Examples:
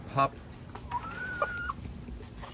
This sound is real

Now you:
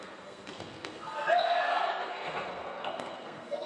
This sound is fake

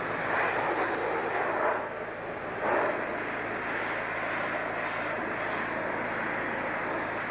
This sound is real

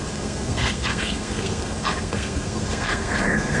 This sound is fake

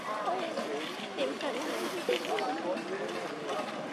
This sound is real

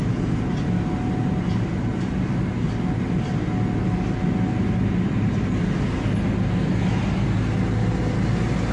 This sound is real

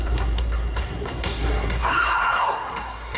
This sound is fake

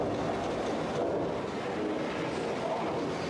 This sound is real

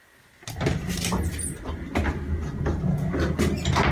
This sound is real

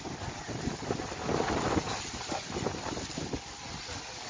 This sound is real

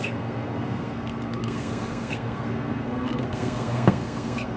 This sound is fake